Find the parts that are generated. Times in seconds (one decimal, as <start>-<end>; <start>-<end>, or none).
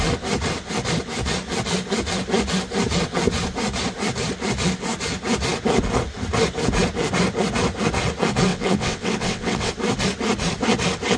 8.5-9.7